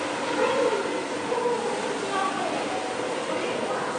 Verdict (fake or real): real